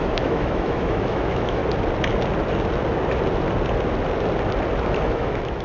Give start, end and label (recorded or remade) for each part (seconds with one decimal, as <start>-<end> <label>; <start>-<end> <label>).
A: 0.0-1.6 remade; 1.6-5.0 recorded; 5.0-5.6 remade